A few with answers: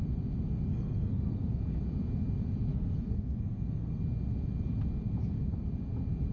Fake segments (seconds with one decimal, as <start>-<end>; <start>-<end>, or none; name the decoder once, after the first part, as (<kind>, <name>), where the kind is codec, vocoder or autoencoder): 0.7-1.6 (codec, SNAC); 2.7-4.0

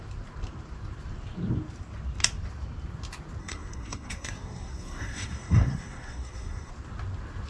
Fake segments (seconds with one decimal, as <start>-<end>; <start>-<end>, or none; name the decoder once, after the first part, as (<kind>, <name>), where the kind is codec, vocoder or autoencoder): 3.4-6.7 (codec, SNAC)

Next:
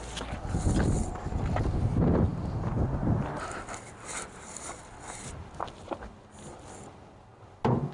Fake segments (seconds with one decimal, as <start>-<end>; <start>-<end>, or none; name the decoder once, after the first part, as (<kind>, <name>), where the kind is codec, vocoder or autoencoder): none